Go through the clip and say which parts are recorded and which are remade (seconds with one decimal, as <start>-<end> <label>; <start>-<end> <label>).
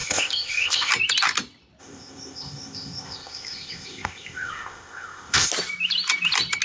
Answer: 0.0-0.9 remade; 0.9-1.8 recorded; 1.8-5.5 remade; 5.5-6.6 recorded